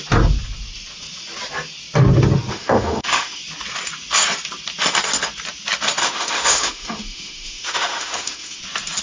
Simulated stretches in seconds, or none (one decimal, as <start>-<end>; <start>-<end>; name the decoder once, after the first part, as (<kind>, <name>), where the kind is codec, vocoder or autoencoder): 2.5-3.4 (autoencoder, DAC-VAE); 6.0-8.6